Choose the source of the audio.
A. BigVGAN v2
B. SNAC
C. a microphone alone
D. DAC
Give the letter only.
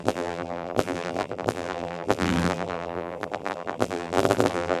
A